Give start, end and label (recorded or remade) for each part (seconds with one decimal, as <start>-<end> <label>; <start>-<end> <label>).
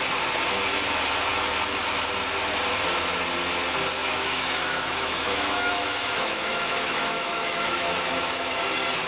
0.0-4.0 recorded; 4.0-8.6 remade; 8.6-9.1 recorded